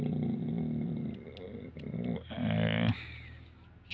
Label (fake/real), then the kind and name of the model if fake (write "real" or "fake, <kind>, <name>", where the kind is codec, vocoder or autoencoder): real